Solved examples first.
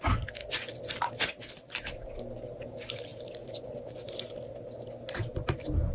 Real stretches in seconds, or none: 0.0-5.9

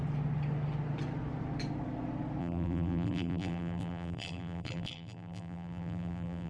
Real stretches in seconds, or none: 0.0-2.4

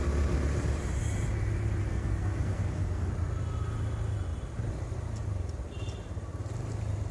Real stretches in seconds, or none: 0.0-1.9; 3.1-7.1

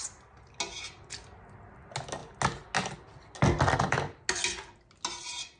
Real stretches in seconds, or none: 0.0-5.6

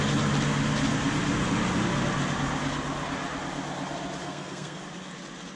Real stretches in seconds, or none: 0.0-4.2; 4.8-5.6

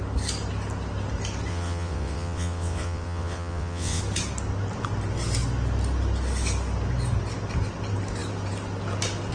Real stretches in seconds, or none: 0.0-1.5; 4.0-9.3